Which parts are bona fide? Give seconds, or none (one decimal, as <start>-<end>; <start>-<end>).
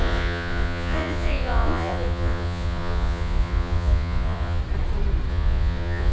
4.6-5.3